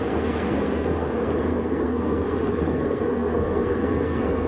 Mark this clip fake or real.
fake